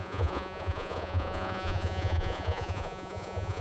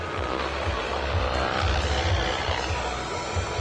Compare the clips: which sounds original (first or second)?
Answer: second